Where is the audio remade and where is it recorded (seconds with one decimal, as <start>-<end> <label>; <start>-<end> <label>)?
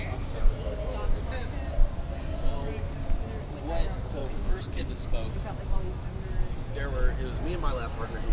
0.0-4.2 recorded; 4.2-4.9 remade; 4.9-8.3 recorded